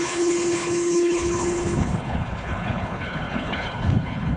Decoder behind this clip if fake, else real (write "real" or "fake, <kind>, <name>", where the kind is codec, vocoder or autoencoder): fake, codec, HILCodec